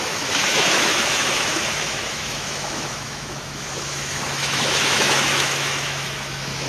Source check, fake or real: fake